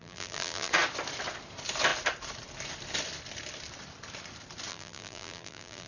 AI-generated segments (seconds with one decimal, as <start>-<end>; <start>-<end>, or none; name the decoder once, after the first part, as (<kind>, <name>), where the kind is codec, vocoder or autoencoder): 0.0-0.7 (vocoder, BigVGAN v2); 4.7-5.9